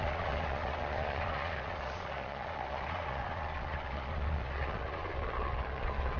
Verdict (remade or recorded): remade